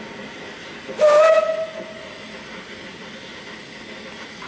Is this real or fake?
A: real